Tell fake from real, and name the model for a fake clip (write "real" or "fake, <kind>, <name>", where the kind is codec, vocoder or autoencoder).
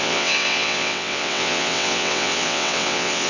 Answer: fake, vocoder, WaveNeXt